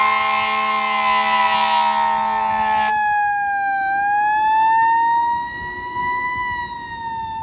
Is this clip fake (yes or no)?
no